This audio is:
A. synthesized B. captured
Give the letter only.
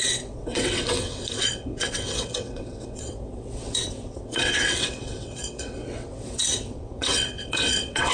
A